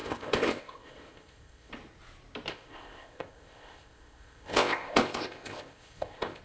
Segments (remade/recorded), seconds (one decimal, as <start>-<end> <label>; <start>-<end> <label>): 0.0-1.7 remade; 1.7-2.5 recorded; 2.5-6.4 remade

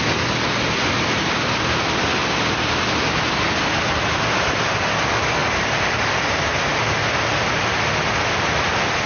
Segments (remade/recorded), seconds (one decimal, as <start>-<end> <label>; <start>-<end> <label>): 0.0-9.1 recorded